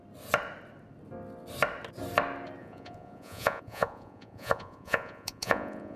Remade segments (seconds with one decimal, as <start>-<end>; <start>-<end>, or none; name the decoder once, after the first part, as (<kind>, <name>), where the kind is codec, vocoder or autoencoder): 2.6-6.0 (vocoder, Vocos)